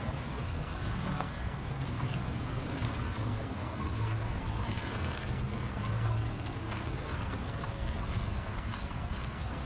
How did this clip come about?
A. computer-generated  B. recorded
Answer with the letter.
A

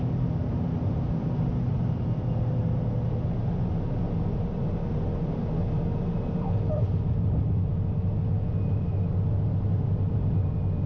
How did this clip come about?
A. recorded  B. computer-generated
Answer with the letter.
A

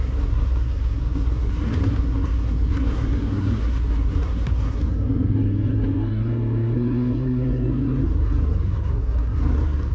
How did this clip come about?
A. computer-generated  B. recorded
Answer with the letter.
A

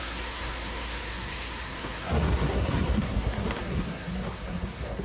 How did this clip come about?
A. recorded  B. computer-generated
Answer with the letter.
B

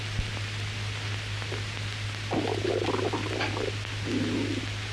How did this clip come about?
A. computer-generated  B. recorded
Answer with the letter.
B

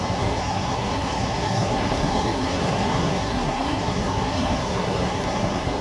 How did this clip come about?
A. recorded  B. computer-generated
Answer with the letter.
B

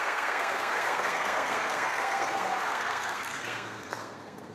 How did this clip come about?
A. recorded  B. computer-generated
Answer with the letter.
B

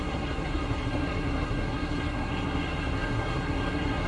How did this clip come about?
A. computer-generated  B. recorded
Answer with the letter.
A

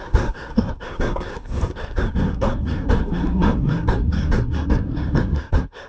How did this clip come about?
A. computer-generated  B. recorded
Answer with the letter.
A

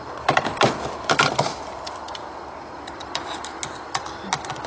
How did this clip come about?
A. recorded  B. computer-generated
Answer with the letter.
A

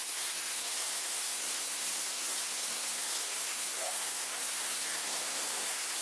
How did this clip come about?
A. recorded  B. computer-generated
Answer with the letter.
B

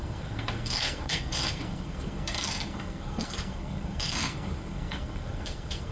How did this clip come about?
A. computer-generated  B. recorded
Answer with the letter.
A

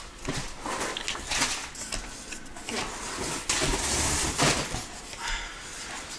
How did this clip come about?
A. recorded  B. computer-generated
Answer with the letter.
A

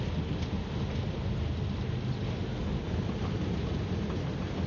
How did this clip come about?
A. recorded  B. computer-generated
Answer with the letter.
A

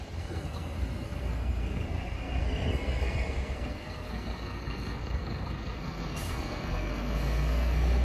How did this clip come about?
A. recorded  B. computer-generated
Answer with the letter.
B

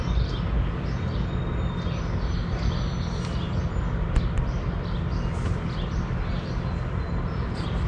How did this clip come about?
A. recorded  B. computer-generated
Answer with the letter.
A